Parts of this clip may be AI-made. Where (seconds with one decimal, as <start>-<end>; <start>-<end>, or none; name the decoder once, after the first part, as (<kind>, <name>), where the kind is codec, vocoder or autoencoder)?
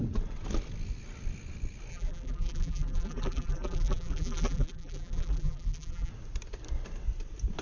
1.9-6.1 (vocoder, BigVGAN v2)